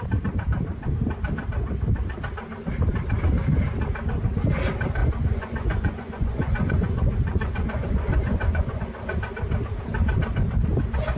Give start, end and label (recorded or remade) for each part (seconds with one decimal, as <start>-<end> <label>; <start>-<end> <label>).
0.0-5.0 recorded; 5.0-8.8 remade; 8.8-11.2 recorded